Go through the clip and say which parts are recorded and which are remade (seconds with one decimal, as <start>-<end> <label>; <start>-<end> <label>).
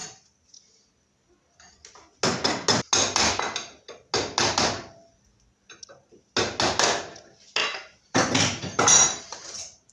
0.0-7.6 recorded; 7.6-9.9 remade